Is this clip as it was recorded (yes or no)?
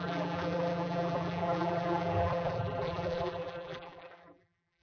no